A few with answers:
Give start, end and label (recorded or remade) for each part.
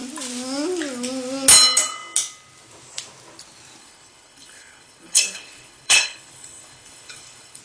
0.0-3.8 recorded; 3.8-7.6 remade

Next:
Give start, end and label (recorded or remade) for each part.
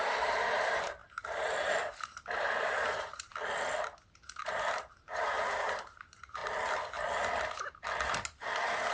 0.0-3.3 remade; 3.3-4.4 recorded; 4.4-6.4 remade; 6.4-8.9 recorded